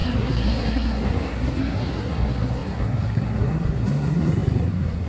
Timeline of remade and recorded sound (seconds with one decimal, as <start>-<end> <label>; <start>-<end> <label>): 0.0-5.1 remade